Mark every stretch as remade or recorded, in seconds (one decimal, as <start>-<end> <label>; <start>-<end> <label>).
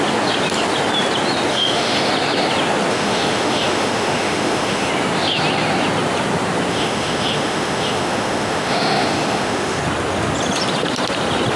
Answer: 0.0-1.5 recorded; 1.5-2.1 remade; 2.1-2.9 recorded; 2.9-4.9 remade; 4.9-6.7 recorded; 6.7-9.8 remade; 9.8-11.6 recorded